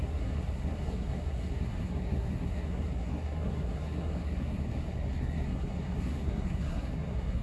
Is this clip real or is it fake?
fake